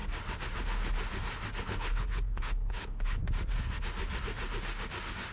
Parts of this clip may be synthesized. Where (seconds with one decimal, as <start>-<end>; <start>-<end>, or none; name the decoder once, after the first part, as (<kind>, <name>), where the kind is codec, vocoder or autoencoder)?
1.6-3.2 (codec, HILCodec)